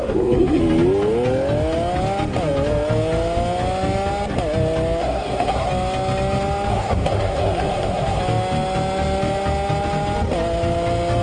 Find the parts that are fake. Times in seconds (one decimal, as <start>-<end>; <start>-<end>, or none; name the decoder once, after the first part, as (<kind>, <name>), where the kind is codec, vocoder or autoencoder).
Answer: 0.0-0.6 (codec, SNAC); 5.0-5.7; 6.7-8.2